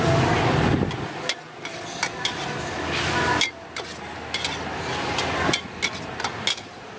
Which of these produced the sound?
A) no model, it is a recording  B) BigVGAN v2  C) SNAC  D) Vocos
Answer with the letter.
A